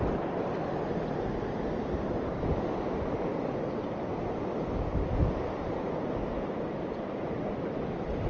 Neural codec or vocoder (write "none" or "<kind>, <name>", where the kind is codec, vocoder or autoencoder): none